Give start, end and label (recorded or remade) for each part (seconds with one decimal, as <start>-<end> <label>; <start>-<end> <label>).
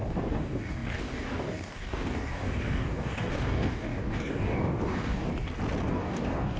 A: 0.0-5.3 remade; 5.3-5.9 recorded; 5.9-6.6 remade